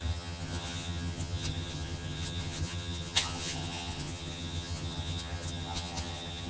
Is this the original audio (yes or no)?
no